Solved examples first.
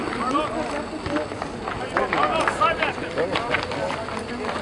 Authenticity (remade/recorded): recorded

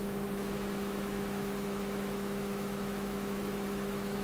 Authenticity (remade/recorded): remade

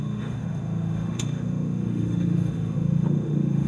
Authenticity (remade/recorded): remade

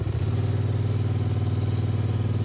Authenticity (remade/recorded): recorded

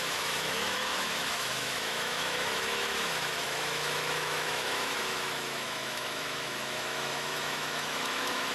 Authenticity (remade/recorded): remade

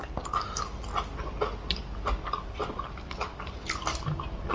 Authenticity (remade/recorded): recorded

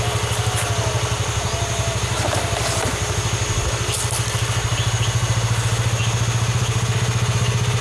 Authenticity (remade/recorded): recorded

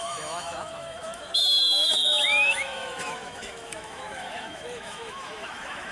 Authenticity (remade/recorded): remade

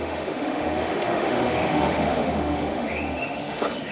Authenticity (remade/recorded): remade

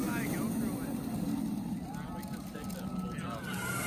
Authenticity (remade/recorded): recorded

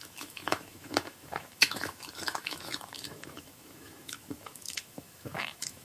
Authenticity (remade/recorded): remade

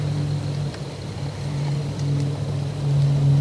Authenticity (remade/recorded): recorded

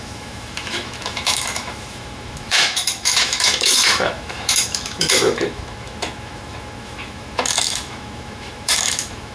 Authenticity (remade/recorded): remade